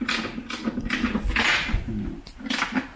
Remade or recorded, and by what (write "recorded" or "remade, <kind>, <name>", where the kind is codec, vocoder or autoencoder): recorded